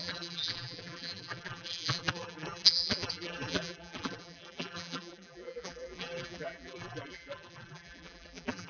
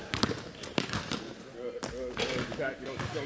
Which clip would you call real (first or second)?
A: second